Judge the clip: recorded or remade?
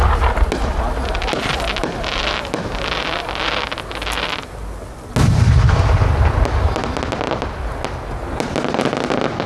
recorded